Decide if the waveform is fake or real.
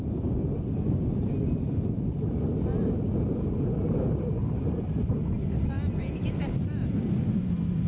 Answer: real